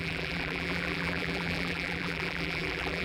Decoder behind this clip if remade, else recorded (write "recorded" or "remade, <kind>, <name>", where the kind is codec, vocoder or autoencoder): remade, vocoder, BigVGAN v2